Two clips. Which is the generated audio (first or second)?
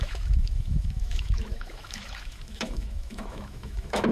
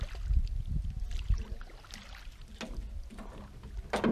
first